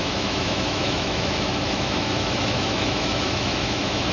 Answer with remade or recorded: remade